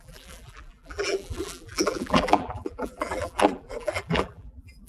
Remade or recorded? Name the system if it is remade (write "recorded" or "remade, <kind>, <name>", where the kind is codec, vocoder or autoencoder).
remade, vocoder, BigVGAN v2